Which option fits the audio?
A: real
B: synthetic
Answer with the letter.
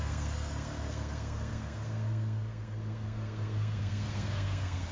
B